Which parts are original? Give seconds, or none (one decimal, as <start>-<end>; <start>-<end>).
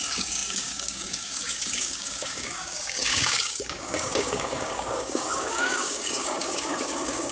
none